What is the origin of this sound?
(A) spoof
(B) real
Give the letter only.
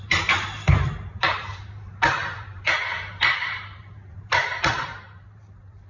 A